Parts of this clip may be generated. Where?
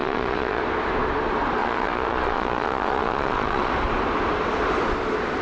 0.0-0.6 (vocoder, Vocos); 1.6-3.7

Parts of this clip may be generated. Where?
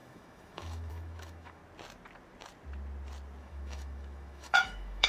0.0-1.6 (autoencoder, DAC-VAE); 3.4-5.1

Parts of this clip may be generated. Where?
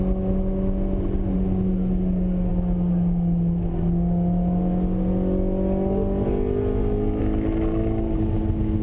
none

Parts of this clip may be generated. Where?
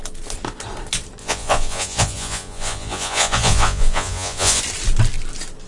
1.2-4.6 (vocoder, Vocos)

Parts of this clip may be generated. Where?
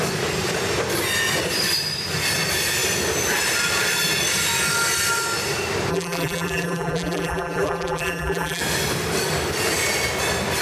5.9-8.6 (vocoder, BigVGAN v2)